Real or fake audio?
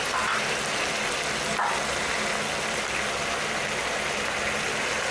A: real